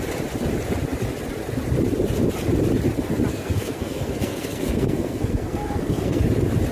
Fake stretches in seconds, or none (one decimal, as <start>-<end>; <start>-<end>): 3.3-6.2